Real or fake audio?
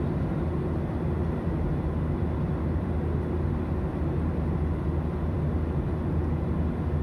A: real